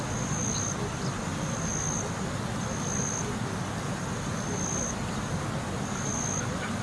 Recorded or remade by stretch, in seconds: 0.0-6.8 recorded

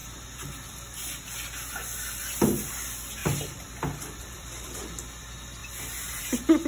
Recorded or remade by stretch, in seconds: 0.0-3.2 recorded; 3.2-4.8 remade; 4.8-6.7 recorded

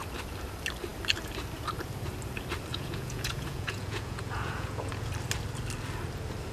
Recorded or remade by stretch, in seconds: 0.0-2.7 recorded; 2.7-5.1 remade; 5.1-6.5 recorded

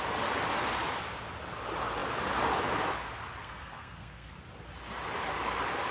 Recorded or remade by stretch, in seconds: 0.0-3.4 recorded; 3.4-4.3 remade; 4.3-5.9 recorded

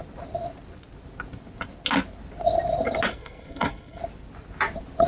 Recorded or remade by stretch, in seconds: 0.0-3.1 recorded; 3.1-4.0 remade; 4.0-5.1 recorded

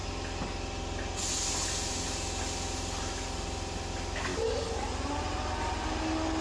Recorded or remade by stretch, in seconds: 0.0-6.4 recorded

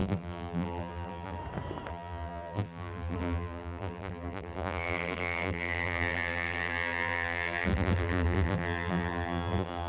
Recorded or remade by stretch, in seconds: 0.0-1.4 remade; 1.4-1.9 recorded; 1.9-9.9 remade

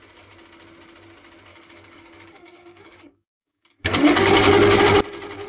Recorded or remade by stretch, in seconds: 0.0-1.5 recorded; 1.5-4.8 remade; 4.8-5.5 recorded